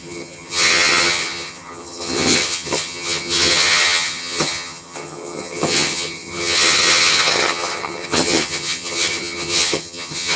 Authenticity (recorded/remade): remade